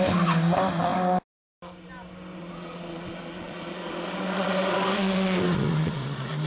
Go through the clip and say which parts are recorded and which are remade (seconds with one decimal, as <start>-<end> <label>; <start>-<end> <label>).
0.0-2.4 recorded; 2.4-6.5 remade